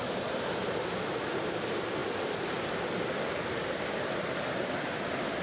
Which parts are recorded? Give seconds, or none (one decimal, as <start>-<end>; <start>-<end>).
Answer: 2.0-4.6